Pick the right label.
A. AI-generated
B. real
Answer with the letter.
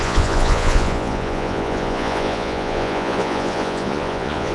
A